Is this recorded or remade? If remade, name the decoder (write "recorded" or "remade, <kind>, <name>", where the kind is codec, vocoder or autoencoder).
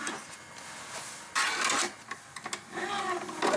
recorded